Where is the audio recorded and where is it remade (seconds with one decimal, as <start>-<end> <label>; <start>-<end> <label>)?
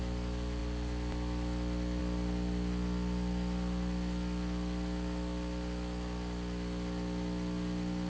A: 0.0-8.1 recorded